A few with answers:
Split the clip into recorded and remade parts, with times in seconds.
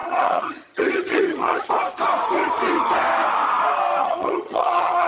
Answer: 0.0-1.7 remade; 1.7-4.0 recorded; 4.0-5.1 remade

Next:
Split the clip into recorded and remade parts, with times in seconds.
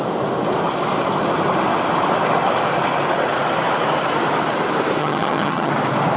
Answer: 0.0-5.0 recorded; 5.0-5.7 remade; 5.7-6.2 recorded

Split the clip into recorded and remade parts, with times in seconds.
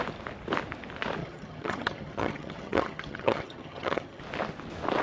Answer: 0.0-1.2 recorded; 1.2-4.2 remade; 4.2-5.0 recorded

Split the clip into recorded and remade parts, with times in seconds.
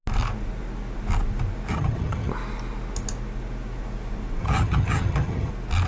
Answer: 0.0-1.7 recorded; 1.7-2.3 remade; 2.3-4.4 recorded; 4.4-5.5 remade; 5.5-5.9 recorded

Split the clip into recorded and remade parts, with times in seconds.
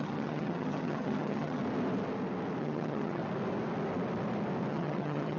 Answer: 0.0-1.6 remade; 1.6-2.6 recorded; 2.6-3.2 remade; 3.2-4.7 recorded; 4.7-5.4 remade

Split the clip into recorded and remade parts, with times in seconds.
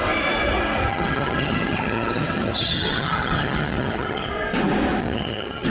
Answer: 0.0-0.9 recorded; 0.9-4.3 remade; 4.3-5.0 recorded; 5.0-5.7 remade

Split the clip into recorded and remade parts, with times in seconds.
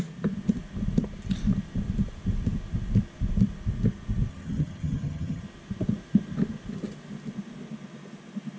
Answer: 0.0-4.3 recorded; 4.3-5.4 remade; 5.4-8.6 recorded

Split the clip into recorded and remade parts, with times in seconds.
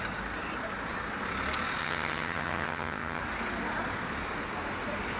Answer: 0.0-1.8 recorded; 1.8-3.2 remade; 3.2-5.2 recorded